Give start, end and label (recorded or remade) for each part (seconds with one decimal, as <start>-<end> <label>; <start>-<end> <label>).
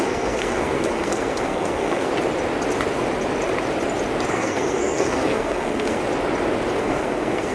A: 0.0-2.1 remade; 2.1-4.3 recorded; 4.3-6.0 remade; 6.0-6.8 recorded; 6.8-7.5 remade